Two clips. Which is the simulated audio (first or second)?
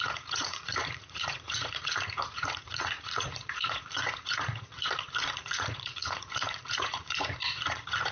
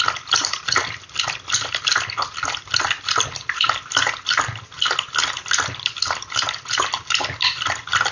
first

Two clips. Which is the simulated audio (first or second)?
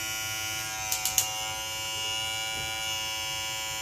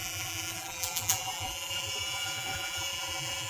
second